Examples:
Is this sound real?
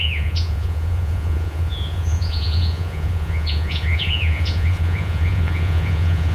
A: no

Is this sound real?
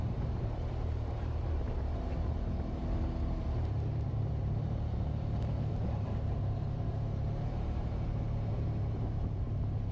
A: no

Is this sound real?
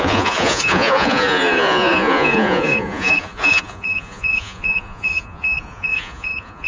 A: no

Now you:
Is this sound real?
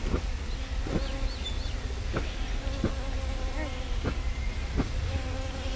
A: yes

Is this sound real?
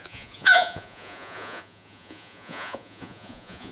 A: no